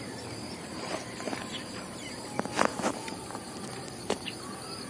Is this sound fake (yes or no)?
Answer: yes